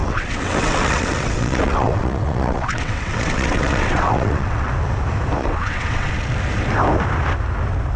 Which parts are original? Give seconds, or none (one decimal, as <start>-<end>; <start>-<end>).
4.7-5.4; 6.1-8.0